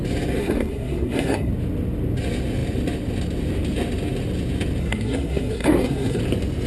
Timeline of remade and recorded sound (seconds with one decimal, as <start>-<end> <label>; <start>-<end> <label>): 0.0-0.4 recorded; 0.4-1.5 remade; 1.5-4.8 recorded; 4.8-6.2 remade; 6.2-6.7 recorded